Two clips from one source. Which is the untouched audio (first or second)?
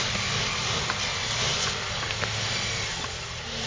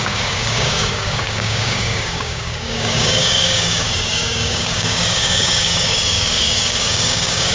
first